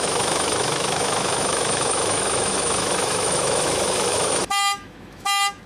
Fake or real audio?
fake